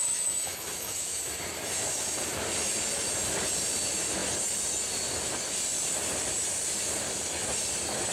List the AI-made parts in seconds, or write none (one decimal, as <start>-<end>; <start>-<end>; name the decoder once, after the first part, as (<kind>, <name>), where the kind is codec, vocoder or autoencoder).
0.0-1.2 (autoencoder, DAC-VAE)